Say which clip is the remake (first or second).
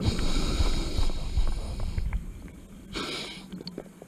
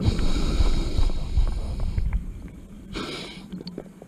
second